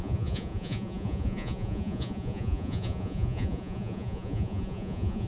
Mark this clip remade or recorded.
remade